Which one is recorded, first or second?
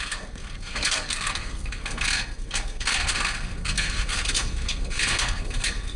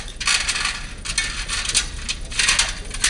second